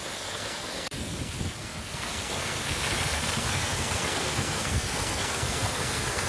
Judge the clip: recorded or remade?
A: remade